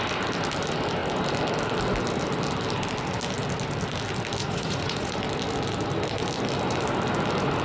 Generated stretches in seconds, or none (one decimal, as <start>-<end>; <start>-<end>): 4.4-5.2